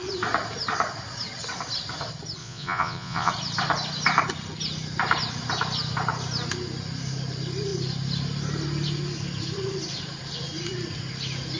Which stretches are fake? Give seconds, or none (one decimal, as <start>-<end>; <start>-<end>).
2.4-3.3